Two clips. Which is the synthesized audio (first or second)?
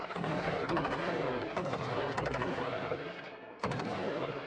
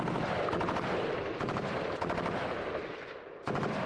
first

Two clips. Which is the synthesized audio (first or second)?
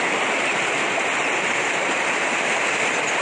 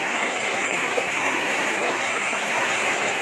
second